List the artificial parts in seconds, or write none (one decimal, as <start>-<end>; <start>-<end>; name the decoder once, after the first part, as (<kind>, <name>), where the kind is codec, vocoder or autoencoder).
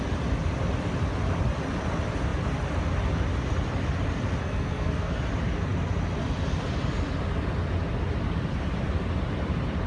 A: 4.4-5.2 (codec, SNAC)